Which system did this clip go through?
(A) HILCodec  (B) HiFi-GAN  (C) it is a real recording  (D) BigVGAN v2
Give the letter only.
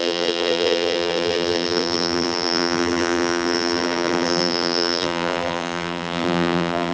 D